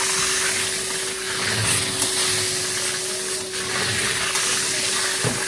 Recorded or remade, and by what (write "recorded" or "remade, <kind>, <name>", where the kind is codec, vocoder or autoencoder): recorded